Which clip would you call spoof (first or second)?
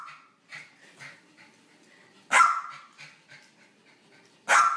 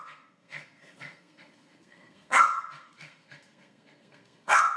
second